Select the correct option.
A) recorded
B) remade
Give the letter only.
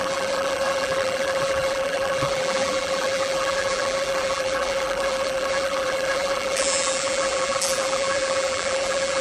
B